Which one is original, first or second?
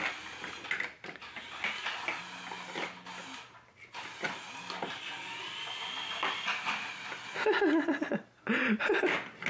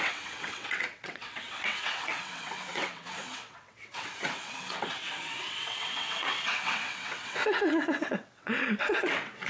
first